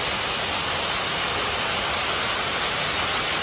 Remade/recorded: recorded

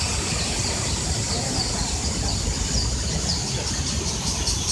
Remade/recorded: recorded